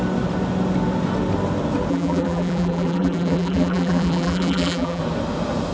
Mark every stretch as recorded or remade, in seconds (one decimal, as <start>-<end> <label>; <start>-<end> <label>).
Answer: 0.0-1.9 recorded; 1.9-5.0 remade; 5.0-5.7 recorded